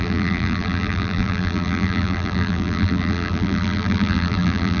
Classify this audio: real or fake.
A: fake